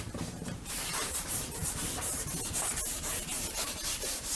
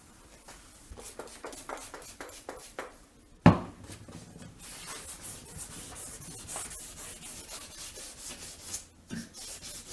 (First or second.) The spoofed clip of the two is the first